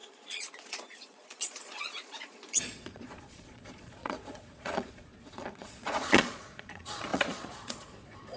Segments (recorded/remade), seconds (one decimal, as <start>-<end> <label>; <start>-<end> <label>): 0.0-8.4 remade